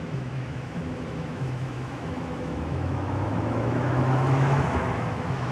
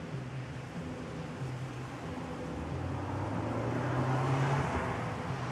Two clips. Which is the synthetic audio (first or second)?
first